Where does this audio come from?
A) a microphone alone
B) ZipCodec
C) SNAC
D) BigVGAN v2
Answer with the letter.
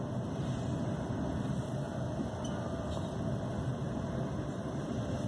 A